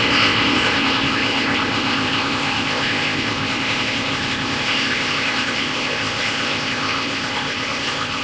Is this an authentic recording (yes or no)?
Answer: no